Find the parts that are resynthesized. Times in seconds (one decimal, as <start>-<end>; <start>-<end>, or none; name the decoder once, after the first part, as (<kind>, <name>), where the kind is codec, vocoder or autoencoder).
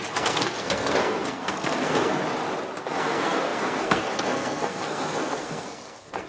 0.0-2.2 (codec, SNAC); 2.8-6.3